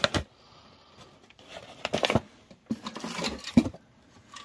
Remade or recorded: recorded